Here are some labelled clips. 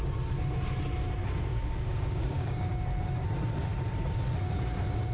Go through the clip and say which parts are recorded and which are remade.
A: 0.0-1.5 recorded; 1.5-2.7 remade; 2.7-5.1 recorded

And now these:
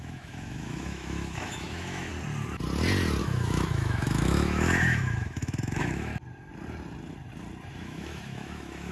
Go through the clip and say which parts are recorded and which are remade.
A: 0.0-2.1 remade; 2.1-3.2 recorded; 3.2-6.1 remade; 6.1-7.7 recorded; 7.7-8.9 remade

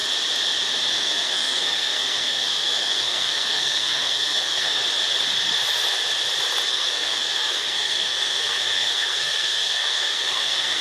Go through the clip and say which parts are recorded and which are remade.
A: 0.0-0.9 recorded; 0.9-4.8 remade; 4.8-6.7 recorded; 6.7-10.8 remade

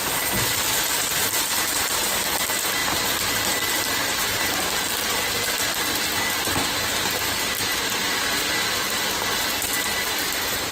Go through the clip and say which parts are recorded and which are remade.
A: 0.0-2.8 recorded; 2.8-3.8 remade; 3.8-10.7 recorded

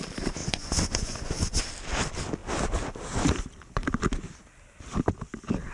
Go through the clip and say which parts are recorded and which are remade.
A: 0.0-0.4 recorded; 0.4-1.6 remade; 1.6-5.7 recorded

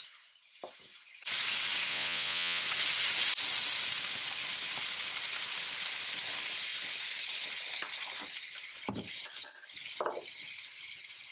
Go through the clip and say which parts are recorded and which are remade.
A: 0.0-1.9 recorded; 1.9-2.6 remade; 2.6-11.3 recorded